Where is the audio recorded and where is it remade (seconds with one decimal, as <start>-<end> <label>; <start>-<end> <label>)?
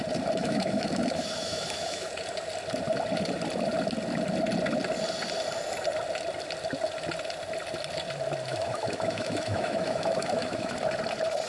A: 0.0-0.4 recorded; 0.4-2.1 remade; 2.1-8.5 recorded; 8.5-10.7 remade; 10.7-11.5 recorded